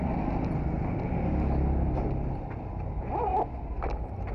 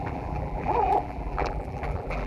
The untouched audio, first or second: first